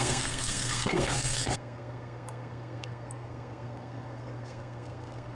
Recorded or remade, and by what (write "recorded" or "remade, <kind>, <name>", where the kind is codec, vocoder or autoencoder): remade, codec, SNAC